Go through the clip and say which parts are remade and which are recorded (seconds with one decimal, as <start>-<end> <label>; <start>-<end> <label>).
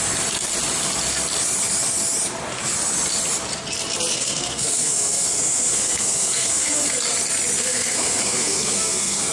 0.0-4.1 recorded; 4.1-6.9 remade; 6.9-7.6 recorded; 7.6-9.3 remade